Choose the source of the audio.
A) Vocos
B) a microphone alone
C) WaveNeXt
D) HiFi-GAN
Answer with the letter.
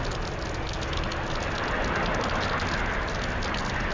B